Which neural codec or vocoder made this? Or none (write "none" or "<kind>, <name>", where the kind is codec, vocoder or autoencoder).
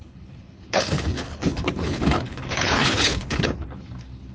codec, HILCodec